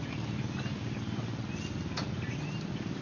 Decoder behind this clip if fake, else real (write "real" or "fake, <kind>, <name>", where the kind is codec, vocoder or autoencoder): real